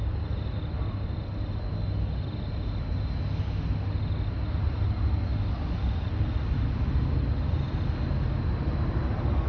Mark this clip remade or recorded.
recorded